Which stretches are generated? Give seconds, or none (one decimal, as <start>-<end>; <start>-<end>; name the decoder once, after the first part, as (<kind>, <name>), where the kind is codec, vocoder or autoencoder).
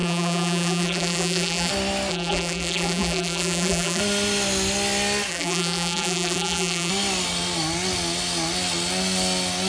0.0-1.7 (vocoder, BigVGAN v2); 2.1-4.0; 5.3-6.9